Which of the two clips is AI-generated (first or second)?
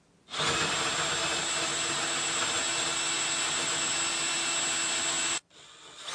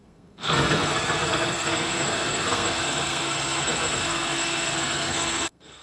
second